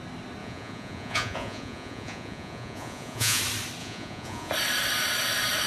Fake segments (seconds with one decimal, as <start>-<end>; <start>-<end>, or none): 0.4-3.4; 3.8-4.5